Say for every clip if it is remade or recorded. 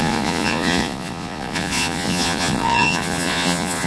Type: remade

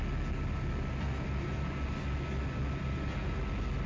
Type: recorded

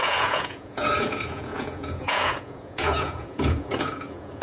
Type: remade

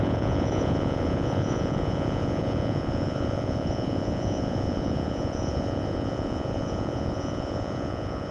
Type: remade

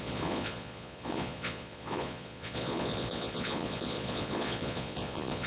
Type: remade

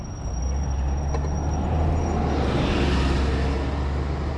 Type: recorded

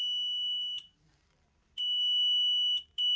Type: recorded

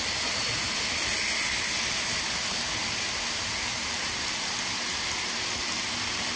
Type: recorded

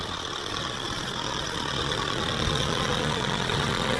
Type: remade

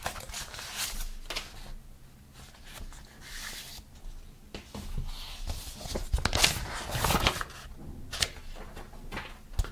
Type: recorded